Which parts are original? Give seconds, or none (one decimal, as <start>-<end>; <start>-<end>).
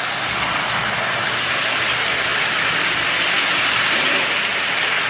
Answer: 0.0-5.1